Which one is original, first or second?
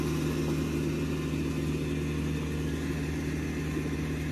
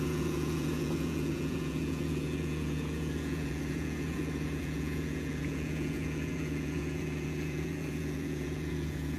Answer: first